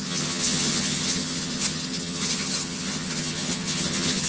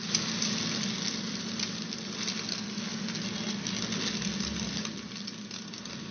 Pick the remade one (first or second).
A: first